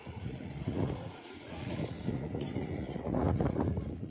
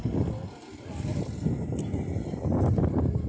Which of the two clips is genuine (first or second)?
second